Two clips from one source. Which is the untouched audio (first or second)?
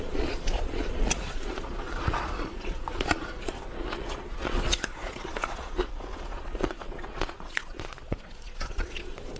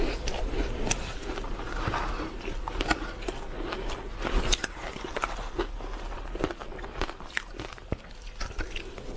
second